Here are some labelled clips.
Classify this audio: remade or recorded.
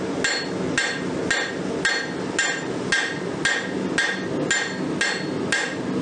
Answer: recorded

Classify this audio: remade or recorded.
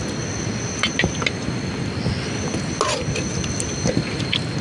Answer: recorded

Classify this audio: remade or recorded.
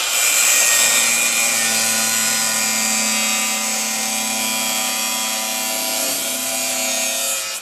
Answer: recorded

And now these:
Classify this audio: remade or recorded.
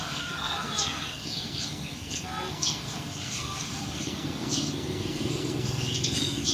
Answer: remade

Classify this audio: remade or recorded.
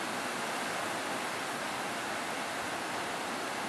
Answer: recorded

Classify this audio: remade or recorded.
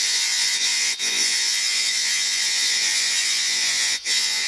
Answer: remade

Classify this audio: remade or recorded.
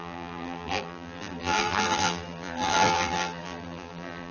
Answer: remade